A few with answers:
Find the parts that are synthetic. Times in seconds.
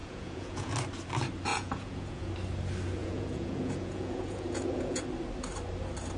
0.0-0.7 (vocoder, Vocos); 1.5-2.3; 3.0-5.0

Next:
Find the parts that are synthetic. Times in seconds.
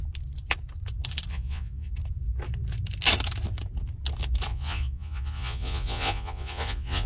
1.3-1.9 (vocoder, Vocos); 4.5-7.1